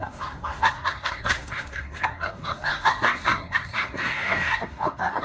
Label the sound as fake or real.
fake